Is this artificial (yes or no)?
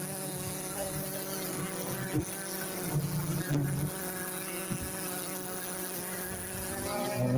no